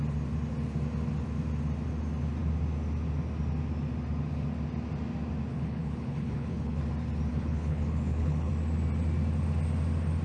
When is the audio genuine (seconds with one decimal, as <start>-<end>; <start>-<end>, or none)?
0.0-5.5; 6.8-7.3; 8.5-10.2